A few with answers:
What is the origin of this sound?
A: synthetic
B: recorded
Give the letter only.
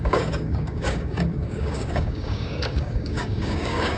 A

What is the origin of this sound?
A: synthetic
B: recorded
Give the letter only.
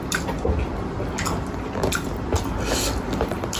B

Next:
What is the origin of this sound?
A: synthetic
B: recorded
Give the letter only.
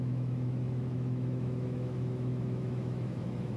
A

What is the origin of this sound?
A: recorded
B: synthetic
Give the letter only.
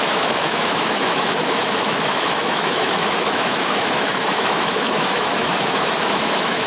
B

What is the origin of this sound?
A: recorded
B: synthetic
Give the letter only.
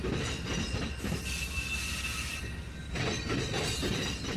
A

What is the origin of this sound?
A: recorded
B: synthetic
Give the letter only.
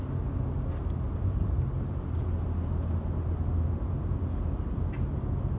A